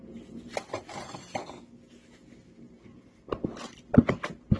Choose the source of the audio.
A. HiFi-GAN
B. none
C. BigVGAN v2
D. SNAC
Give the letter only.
B